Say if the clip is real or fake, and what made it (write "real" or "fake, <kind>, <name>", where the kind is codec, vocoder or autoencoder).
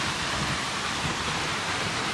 fake, vocoder, BigVGAN v2